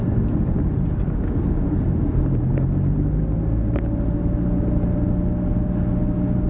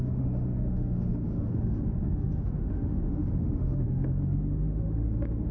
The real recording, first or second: first